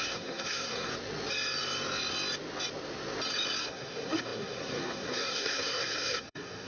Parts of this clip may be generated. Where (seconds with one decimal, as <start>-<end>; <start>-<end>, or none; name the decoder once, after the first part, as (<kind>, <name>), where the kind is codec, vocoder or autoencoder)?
0.0-0.9 (codec, SNAC); 3.6-6.7